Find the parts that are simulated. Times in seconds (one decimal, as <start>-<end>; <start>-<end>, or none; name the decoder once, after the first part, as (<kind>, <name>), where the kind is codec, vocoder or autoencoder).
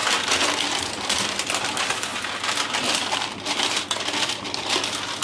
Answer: 1.1-2.1 (vocoder, BigVGAN v2); 4.4-5.2